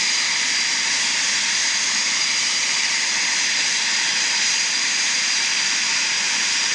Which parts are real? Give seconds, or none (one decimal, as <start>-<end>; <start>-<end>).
0.7-2.2